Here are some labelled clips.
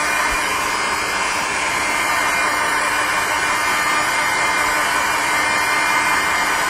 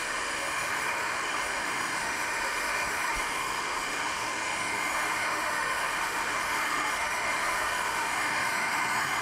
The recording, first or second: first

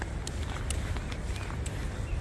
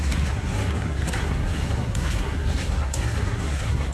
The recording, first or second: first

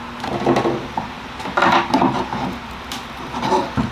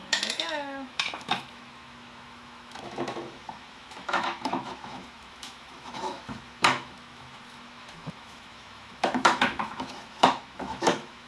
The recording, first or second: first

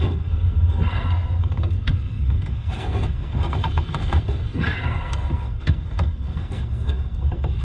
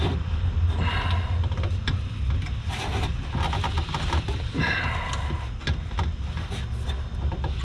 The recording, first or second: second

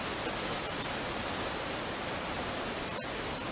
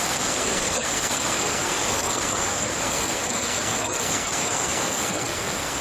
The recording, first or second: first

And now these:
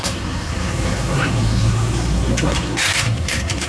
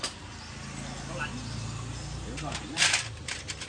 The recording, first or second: second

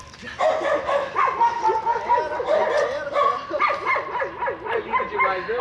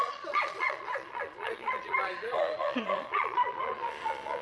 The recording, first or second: first